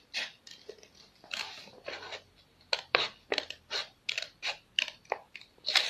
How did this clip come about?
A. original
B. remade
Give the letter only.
B